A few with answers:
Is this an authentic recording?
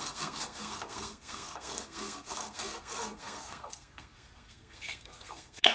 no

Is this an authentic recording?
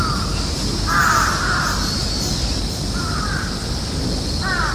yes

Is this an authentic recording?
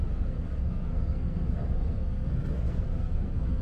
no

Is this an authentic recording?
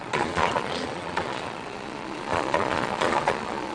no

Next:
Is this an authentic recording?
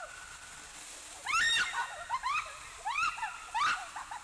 yes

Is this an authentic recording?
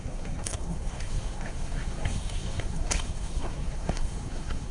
no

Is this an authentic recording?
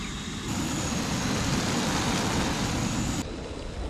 yes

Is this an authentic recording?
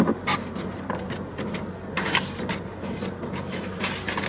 yes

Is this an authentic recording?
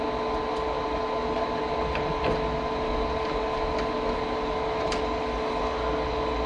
yes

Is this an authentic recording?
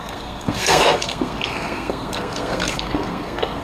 no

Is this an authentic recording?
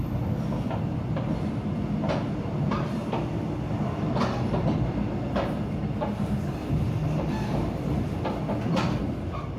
yes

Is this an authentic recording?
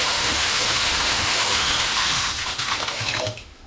no